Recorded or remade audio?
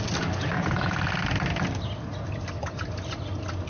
recorded